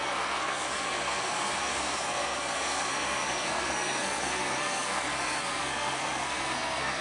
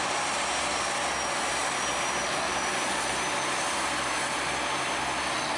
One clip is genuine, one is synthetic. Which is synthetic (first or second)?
first